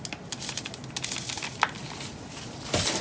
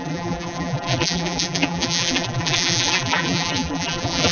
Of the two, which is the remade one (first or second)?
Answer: second